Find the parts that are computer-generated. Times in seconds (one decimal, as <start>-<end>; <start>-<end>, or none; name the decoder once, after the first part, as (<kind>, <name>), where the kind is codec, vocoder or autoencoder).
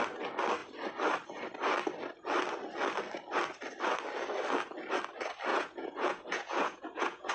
5.5-7.3 (vocoder, Vocos)